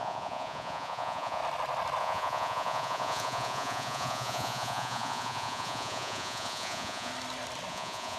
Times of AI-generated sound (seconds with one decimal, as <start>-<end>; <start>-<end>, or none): 0.0-1.4; 2.0-7.1; 7.7-8.2